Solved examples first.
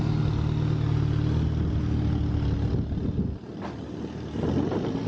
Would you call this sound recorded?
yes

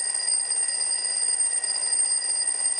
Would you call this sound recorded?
yes